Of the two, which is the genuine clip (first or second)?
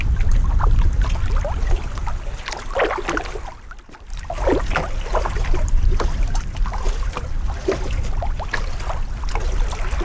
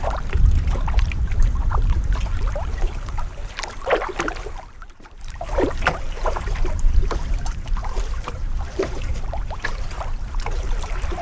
first